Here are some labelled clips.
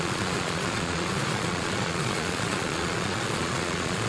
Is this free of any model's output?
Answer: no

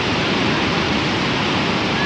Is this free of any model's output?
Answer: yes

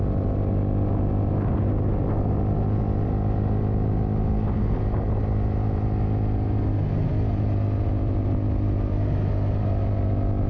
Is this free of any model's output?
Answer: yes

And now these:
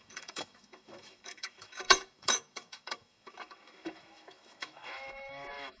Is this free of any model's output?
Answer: no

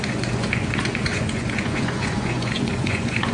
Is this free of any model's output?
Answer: no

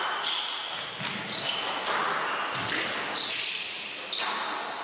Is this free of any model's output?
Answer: no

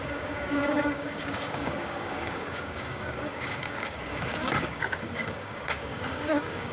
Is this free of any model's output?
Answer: no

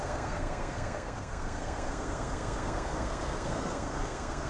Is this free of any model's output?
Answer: no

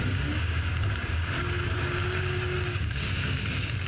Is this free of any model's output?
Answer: no